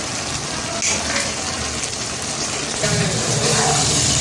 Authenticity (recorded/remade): recorded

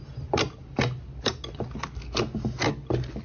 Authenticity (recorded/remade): recorded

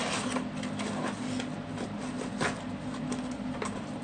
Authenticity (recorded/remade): recorded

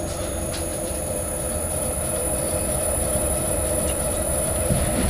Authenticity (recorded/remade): remade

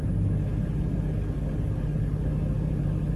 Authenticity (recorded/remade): recorded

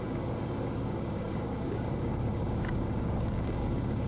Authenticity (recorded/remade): remade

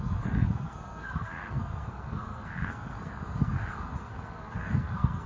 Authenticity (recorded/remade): remade